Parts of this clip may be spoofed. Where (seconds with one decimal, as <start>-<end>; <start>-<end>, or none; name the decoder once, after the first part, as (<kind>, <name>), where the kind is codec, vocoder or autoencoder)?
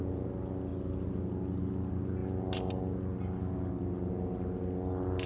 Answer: none